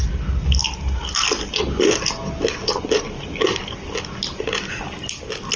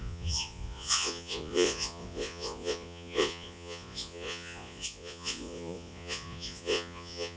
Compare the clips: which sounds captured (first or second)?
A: first